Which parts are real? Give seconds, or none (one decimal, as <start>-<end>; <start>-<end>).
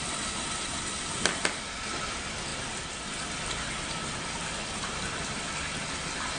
0.0-6.4